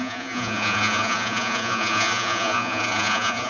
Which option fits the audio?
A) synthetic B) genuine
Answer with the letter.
A